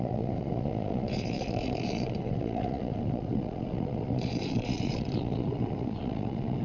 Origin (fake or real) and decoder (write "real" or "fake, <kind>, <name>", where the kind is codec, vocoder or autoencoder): fake, vocoder, Vocos